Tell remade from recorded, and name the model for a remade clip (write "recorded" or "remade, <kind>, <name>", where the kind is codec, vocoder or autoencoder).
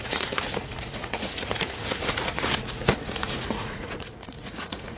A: remade, vocoder, Vocos